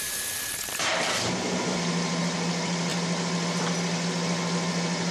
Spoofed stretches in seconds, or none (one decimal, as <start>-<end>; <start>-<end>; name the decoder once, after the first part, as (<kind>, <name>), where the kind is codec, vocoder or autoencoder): 0.9-2.2 (vocoder, BigVGAN v2)